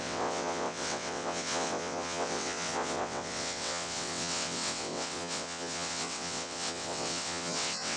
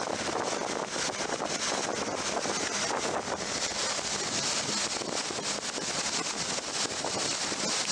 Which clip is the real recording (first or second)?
second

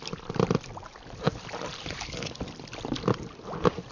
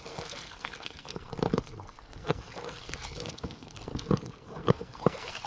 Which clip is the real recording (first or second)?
first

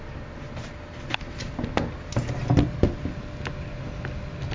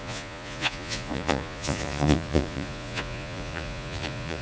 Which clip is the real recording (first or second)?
first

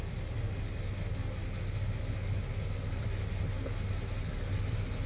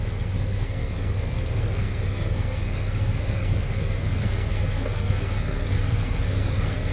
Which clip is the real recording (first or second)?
first